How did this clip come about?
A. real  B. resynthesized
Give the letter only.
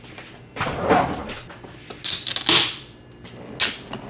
A